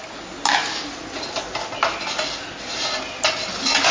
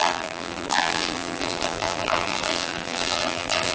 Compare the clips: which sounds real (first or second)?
first